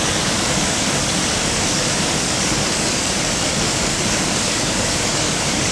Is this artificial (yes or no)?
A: yes